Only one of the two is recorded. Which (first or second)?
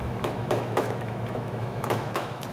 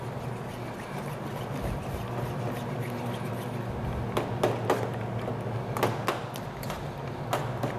second